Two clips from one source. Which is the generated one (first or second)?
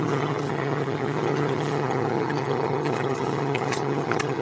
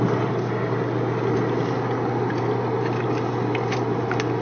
first